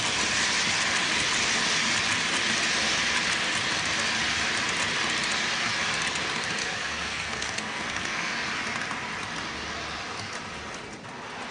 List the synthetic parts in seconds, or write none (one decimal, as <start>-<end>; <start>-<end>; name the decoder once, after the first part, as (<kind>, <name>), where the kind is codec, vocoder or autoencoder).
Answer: 6.6-8.3 (codec, SNAC)